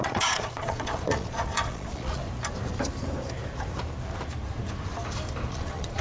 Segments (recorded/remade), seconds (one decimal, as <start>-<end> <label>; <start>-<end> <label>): 0.0-2.2 remade; 2.2-5.5 recorded; 5.5-6.0 remade